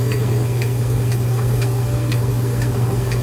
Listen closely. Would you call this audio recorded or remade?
remade